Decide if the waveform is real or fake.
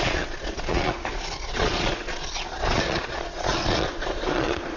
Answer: fake